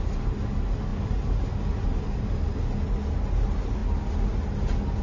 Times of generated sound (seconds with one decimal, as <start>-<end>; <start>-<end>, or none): none